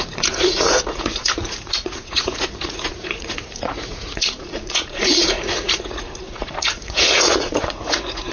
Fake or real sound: fake